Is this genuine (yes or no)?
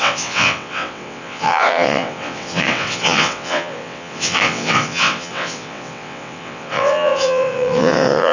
no